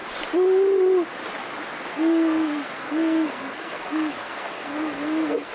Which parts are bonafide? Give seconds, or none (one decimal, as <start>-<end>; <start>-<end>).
0.0-1.9